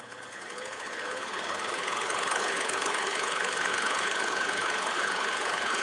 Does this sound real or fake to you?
fake